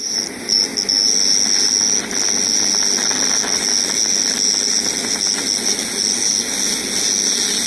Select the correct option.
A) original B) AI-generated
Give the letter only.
A